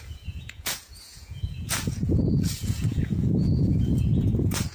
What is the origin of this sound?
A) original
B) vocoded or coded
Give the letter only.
B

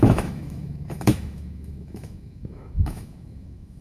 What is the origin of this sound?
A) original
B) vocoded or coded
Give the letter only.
B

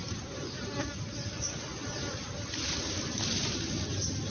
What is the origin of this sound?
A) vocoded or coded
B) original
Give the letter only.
B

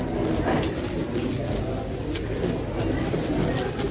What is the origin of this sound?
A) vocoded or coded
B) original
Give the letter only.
B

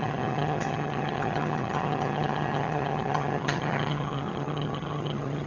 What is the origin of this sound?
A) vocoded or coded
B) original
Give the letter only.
A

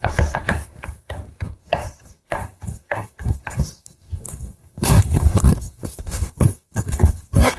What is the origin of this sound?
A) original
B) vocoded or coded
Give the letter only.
B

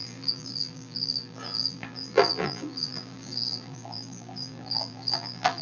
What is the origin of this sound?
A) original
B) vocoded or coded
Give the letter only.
B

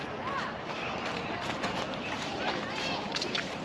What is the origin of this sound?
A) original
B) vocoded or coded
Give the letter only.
B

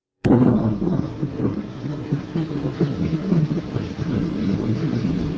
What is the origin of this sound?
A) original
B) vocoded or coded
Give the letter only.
B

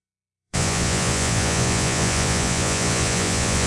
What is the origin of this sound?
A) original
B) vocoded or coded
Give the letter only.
B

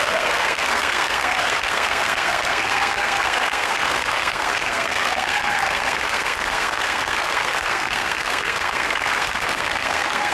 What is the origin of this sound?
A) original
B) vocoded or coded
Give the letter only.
B